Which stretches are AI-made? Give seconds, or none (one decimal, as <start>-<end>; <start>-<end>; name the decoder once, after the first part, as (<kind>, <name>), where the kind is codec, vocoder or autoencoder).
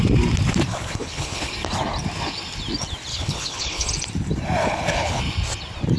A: 0.7-1.5 (codec, HILCodec); 3.1-3.9; 4.6-5.2